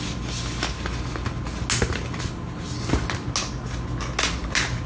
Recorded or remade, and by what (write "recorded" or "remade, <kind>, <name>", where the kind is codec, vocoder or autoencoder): recorded